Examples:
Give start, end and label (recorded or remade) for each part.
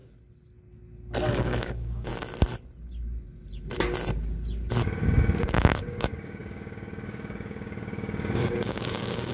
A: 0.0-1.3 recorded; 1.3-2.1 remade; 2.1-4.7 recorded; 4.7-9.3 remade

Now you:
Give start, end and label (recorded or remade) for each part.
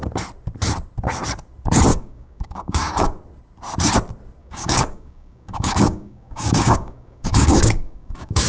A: 0.0-1.9 recorded; 1.9-3.1 remade; 3.1-4.4 recorded; 4.4-8.5 remade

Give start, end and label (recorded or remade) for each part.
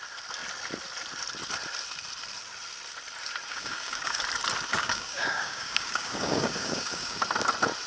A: 0.0-3.5 recorded; 3.5-4.2 remade; 4.2-4.7 recorded; 4.7-7.2 remade; 7.2-7.9 recorded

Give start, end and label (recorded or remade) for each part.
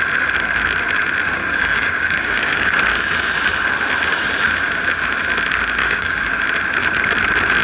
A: 0.0-1.4 recorded; 1.4-2.8 remade; 2.8-5.8 recorded; 5.8-6.3 remade; 6.3-7.6 recorded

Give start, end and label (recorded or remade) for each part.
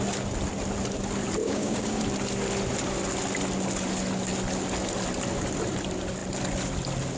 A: 0.0-1.4 recorded; 1.4-2.0 remade; 2.0-7.2 recorded